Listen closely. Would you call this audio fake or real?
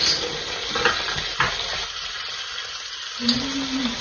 real